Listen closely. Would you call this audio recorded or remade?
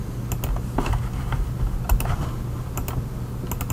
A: recorded